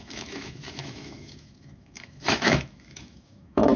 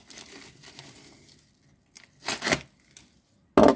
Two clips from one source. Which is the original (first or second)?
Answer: second